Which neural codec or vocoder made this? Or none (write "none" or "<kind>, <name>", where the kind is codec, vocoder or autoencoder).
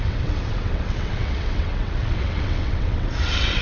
vocoder, WaveNeXt